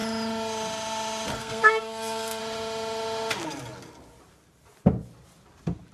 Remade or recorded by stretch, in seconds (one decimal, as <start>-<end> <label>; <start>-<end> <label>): 0.0-1.4 recorded; 1.4-2.4 remade; 2.4-5.9 recorded